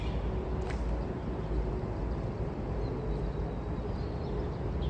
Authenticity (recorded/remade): recorded